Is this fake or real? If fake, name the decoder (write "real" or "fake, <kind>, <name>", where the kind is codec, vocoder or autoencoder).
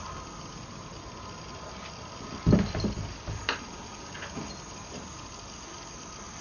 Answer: real